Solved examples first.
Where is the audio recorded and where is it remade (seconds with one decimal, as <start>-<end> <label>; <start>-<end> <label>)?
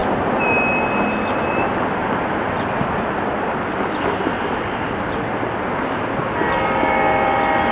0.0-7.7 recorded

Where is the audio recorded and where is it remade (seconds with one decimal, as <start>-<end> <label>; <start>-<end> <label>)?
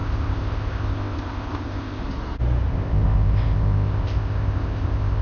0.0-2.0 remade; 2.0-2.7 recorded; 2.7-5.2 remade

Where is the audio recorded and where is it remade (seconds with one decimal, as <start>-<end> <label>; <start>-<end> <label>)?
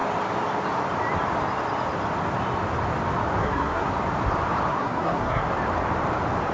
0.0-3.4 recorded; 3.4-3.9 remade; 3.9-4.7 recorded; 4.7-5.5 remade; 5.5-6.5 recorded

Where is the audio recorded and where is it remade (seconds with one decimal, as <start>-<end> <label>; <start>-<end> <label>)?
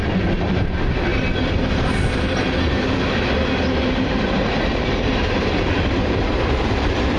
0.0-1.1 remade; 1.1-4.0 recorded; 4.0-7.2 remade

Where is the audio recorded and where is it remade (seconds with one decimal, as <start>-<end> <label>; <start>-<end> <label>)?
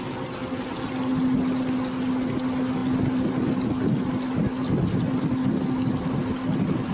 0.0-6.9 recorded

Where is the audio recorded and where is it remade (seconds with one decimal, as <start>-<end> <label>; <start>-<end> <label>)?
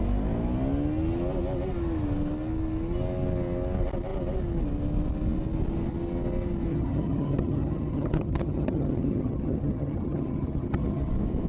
0.0-6.7 recorded; 6.7-11.1 remade; 11.1-11.5 recorded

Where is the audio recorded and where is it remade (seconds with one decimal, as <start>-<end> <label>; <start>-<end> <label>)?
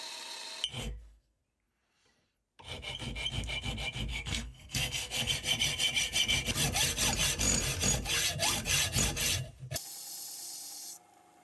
0.0-0.8 recorded; 0.8-1.4 remade; 1.4-4.1 recorded; 4.1-5.3 remade; 5.3-11.4 recorded